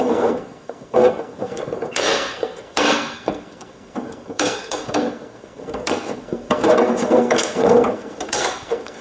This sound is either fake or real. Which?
fake